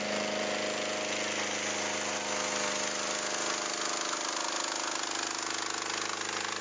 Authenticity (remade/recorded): recorded